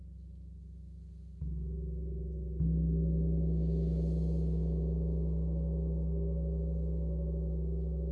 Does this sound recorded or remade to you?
recorded